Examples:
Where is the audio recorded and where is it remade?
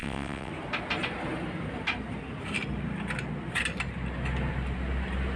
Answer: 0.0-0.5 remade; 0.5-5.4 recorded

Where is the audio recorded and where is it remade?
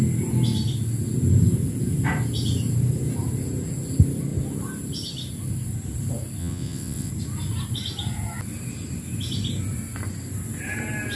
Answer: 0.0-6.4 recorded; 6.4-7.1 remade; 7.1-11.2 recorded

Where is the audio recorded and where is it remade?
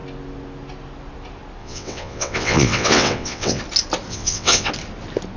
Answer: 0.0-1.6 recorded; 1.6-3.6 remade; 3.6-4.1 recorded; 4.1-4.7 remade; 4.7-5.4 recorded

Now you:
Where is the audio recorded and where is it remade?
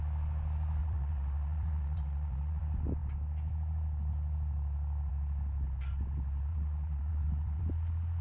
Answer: 0.0-0.8 recorded; 0.8-2.6 remade; 2.6-6.5 recorded; 6.5-7.6 remade; 7.6-8.2 recorded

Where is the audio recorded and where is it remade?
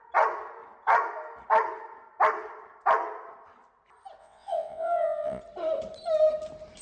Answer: 0.0-4.2 recorded; 4.2-5.4 remade; 5.4-6.8 recorded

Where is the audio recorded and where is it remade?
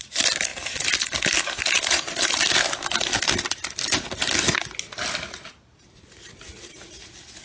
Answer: 0.0-7.4 recorded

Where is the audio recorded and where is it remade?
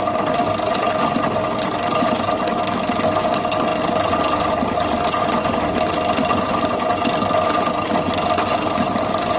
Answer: 0.0-9.4 recorded